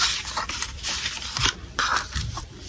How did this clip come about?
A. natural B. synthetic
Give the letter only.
B